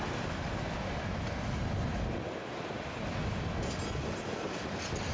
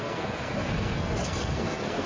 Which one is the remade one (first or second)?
second